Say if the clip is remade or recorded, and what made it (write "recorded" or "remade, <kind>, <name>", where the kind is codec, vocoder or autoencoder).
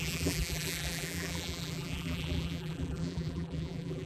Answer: remade, vocoder, BigVGAN v2